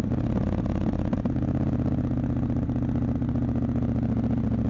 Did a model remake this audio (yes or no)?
no